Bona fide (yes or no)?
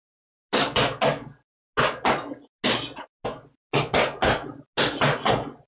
yes